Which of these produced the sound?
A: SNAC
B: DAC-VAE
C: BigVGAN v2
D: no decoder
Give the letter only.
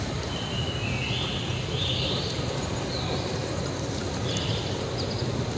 D